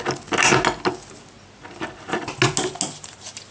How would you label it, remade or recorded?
recorded